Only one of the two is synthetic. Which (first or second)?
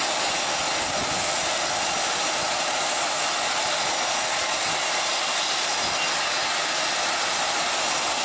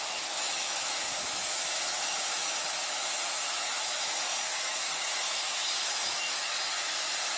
second